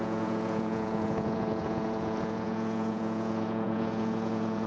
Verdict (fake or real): fake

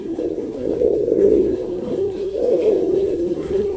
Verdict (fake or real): fake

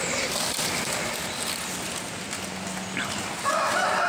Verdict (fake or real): real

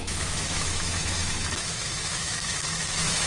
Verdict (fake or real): fake